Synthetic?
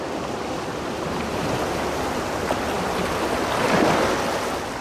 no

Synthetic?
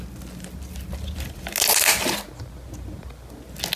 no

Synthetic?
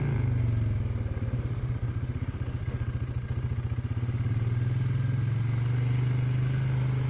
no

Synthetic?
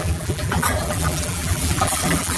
yes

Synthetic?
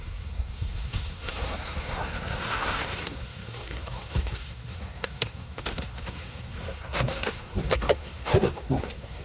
yes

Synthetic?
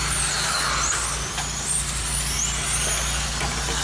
no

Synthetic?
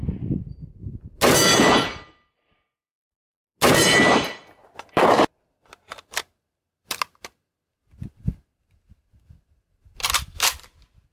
no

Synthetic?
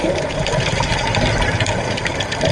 yes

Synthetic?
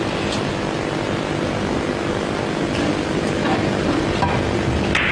no